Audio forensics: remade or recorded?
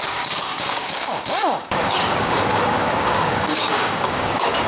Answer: remade